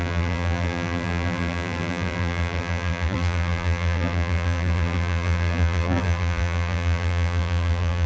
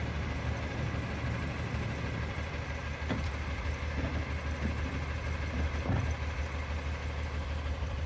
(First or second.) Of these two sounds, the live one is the second